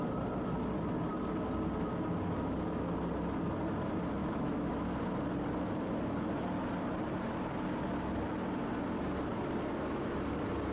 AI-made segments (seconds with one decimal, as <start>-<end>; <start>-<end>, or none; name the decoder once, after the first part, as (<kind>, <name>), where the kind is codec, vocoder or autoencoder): 4.2-4.7 (autoencoder, DAC-VAE)